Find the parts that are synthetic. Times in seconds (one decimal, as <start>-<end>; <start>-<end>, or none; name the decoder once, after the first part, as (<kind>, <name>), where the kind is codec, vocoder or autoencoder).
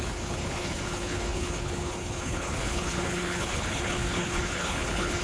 0.0-5.2 (codec, HILCodec)